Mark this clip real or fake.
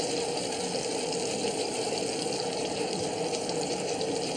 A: real